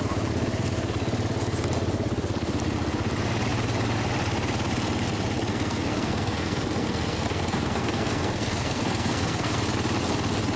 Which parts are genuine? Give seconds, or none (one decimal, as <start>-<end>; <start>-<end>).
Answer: 0.0-5.5; 9.6-10.6